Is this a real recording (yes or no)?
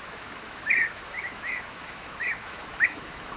no